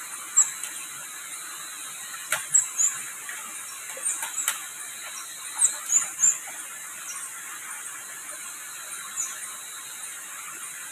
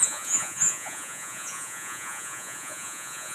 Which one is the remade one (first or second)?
second